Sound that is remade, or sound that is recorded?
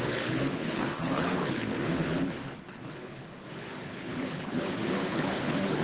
remade